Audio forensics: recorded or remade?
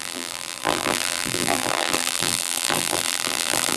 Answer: remade